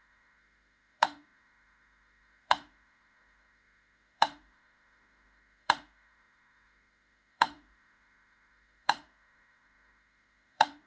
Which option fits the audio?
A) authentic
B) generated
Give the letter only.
B